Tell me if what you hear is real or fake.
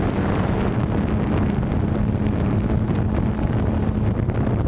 real